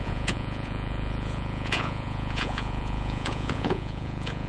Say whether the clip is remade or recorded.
remade